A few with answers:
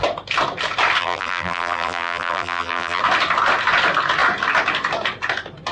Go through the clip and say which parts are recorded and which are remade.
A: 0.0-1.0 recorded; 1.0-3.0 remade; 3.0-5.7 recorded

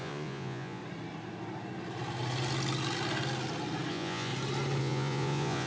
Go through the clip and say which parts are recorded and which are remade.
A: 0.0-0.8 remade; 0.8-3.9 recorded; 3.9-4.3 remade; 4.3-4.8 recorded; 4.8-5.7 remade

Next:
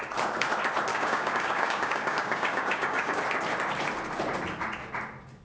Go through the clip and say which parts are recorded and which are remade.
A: 0.0-0.9 recorded; 0.9-3.2 remade; 3.2-5.4 recorded